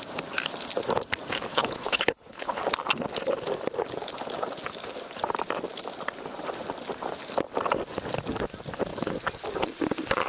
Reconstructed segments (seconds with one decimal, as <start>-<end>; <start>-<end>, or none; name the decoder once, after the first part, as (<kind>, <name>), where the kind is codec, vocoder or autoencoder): 1.5-2.6 (codec, HILCodec)